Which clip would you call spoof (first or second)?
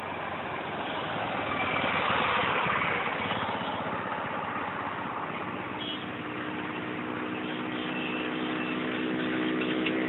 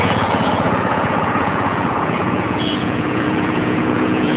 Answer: second